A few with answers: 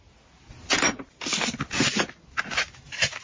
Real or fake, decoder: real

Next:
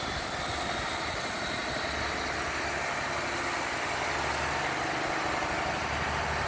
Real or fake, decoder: real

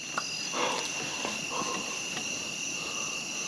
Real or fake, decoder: real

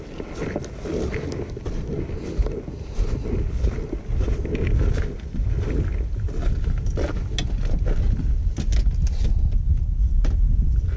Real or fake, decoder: real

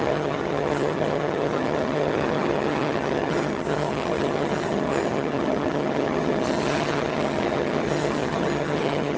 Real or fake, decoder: fake, vocoder, HiFi-GAN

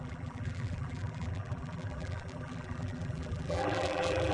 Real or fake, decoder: fake, vocoder, BigVGAN v2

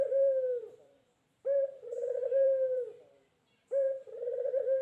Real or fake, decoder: fake, vocoder, BigVGAN v2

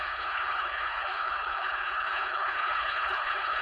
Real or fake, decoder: fake, codec, HILCodec